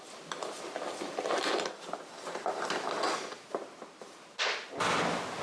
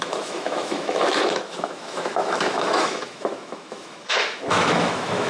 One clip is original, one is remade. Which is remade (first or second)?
second